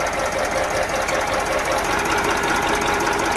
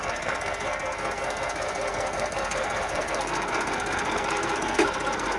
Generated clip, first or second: second